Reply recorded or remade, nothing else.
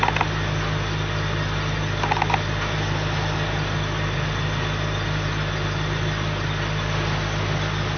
recorded